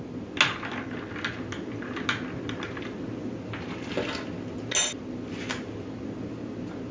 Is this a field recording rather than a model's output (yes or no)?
yes